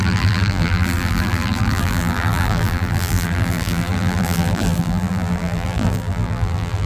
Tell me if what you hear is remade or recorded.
remade